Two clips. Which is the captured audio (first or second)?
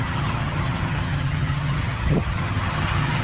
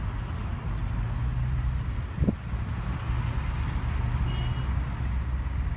second